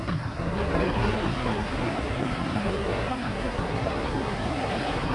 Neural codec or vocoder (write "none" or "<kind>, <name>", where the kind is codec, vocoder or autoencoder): codec, SNAC